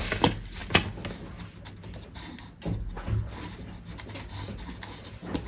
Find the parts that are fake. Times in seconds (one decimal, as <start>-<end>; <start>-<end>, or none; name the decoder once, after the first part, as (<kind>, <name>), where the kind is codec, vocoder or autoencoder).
none